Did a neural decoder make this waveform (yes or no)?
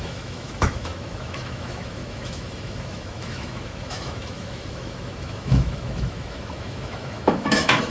yes